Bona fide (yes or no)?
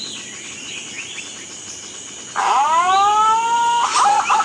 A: yes